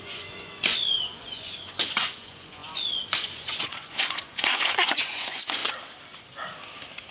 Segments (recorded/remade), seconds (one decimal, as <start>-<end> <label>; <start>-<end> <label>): 0.0-5.6 remade; 5.6-7.1 recorded